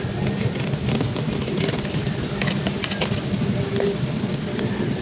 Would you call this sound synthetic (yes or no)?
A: no